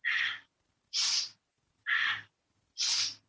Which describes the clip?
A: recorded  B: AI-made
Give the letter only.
A